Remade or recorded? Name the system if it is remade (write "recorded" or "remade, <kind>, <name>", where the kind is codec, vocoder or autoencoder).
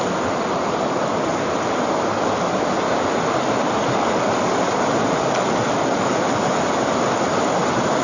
recorded